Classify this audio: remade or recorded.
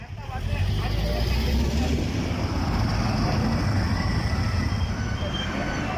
recorded